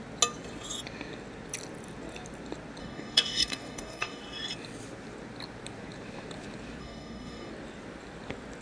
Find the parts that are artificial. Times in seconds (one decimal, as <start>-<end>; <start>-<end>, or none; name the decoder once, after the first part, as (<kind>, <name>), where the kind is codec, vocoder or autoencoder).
2.8-4.2 (codec, DAC); 6.8-7.5